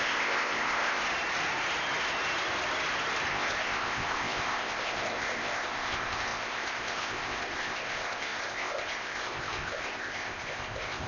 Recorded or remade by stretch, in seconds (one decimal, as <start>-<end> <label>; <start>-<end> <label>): 0.0-1.0 remade; 1.0-3.3 recorded; 3.3-11.1 remade